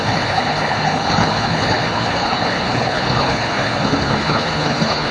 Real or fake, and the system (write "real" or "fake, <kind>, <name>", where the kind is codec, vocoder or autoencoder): fake, codec, HILCodec